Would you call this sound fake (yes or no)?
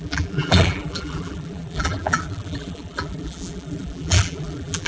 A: yes